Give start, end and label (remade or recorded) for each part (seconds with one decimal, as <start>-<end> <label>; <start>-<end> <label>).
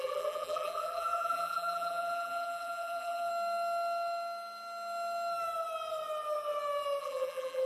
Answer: 0.0-3.3 remade; 3.3-7.0 recorded; 7.0-7.7 remade